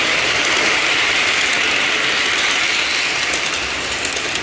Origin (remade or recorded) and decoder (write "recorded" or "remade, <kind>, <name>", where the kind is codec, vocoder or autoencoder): recorded